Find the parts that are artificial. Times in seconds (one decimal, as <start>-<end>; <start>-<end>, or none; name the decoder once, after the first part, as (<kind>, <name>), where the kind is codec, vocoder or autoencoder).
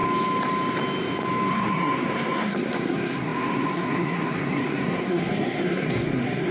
1.5-6.5 (codec, SNAC)